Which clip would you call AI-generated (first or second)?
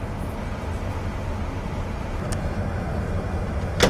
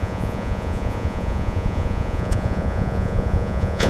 second